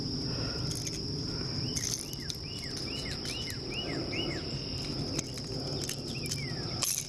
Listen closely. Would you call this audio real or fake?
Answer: real